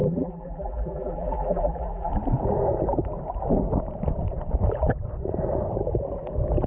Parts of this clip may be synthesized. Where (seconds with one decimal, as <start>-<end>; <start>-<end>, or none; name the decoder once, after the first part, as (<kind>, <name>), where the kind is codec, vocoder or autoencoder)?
0.0-2.1 (vocoder, BigVGAN v2)